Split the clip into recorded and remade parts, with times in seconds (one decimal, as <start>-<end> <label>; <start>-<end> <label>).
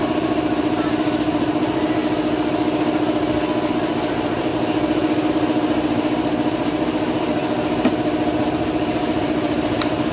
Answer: 0.0-2.0 remade; 2.0-3.7 recorded; 3.7-4.5 remade; 4.5-5.3 recorded; 5.3-7.4 remade; 7.4-8.4 recorded; 8.4-10.1 remade